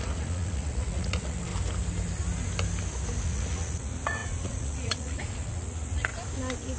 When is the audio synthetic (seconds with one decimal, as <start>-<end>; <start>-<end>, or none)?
0.0-1.5; 3.2-6.1